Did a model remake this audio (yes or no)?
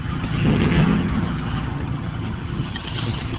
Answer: yes